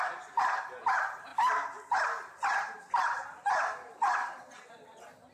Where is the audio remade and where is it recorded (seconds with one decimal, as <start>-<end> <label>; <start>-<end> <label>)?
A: 0.0-1.3 recorded; 1.3-4.4 remade; 4.4-5.3 recorded